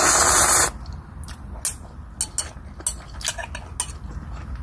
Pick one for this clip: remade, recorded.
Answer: recorded